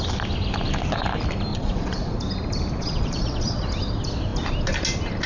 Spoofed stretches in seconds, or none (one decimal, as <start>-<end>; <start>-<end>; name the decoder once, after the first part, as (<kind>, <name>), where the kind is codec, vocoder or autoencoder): 1.5-2.2 (vocoder, Vocos); 2.8-3.6